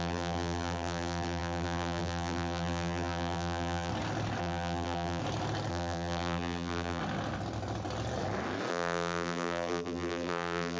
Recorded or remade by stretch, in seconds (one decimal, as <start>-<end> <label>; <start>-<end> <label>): 0.0-3.9 remade; 3.9-4.4 recorded; 4.4-5.2 remade; 5.2-5.7 recorded; 5.7-7.0 remade; 7.0-8.7 recorded; 8.7-10.8 remade